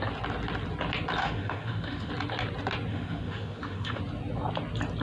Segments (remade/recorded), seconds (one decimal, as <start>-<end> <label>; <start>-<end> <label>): 0.0-1.2 recorded; 1.2-2.1 remade; 2.1-2.9 recorded; 2.9-4.0 remade; 4.0-5.0 recorded